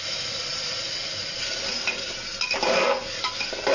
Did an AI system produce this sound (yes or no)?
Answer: no